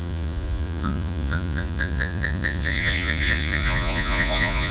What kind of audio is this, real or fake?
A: fake